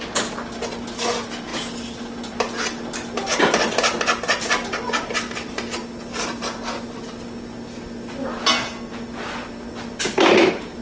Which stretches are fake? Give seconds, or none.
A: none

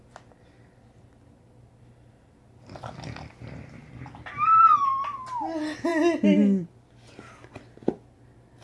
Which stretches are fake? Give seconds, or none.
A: none

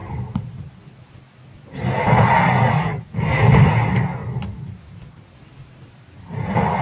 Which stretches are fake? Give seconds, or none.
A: 0.0-0.7 (vocoder, BigVGAN v2); 4.2-5.2